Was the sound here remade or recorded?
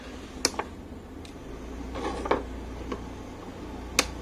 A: recorded